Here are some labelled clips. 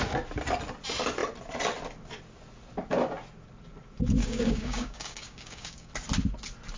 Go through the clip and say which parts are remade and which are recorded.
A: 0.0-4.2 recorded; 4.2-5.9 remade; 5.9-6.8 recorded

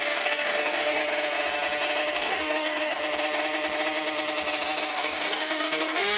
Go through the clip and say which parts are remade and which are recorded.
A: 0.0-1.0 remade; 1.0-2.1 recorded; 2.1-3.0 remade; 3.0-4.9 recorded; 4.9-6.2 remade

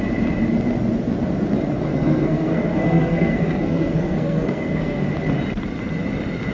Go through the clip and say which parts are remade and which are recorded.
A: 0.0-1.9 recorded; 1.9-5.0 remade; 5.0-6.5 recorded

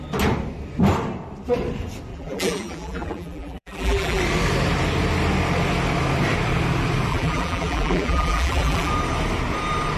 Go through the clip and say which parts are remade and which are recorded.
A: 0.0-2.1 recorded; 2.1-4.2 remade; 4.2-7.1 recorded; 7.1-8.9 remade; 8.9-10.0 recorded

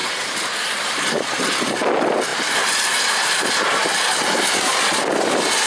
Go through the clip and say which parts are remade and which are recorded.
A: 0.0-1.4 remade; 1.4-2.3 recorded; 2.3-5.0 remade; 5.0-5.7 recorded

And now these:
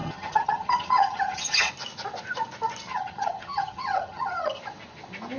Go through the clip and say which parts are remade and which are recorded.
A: 0.0-1.7 remade; 1.7-2.9 recorded; 2.9-4.6 remade; 4.6-5.4 recorded